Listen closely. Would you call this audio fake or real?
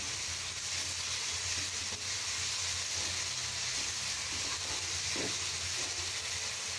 real